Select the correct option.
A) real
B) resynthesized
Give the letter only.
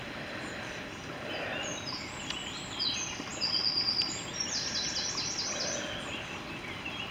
A